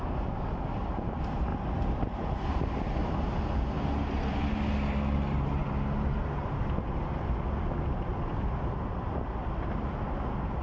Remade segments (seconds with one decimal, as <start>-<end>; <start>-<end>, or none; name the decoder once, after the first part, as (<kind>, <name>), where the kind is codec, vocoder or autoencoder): none